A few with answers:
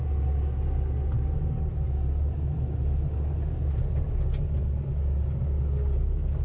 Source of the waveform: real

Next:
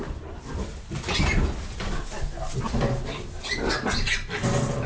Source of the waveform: real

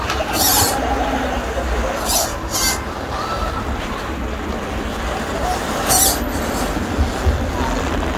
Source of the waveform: real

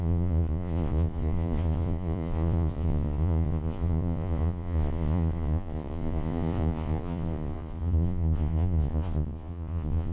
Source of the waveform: fake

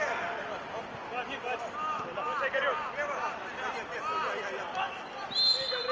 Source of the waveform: real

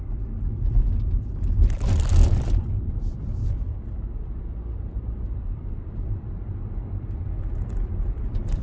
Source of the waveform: fake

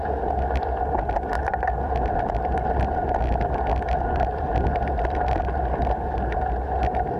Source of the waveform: real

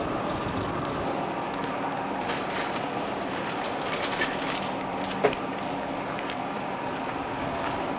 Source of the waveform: fake